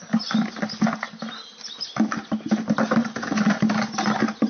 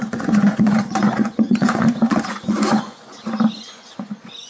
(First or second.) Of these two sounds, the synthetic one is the second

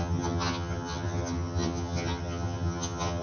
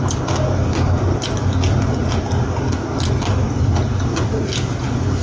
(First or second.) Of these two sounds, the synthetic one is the first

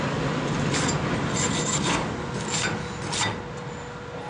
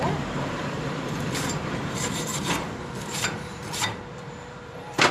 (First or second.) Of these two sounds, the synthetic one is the second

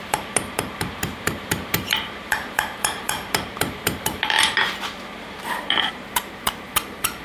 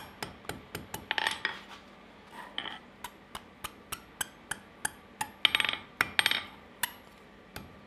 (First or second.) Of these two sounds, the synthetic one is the first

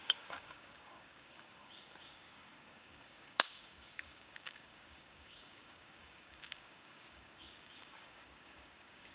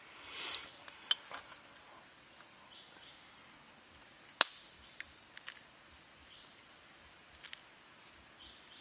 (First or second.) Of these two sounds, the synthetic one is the first